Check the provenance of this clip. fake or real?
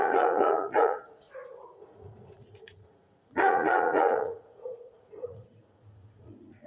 fake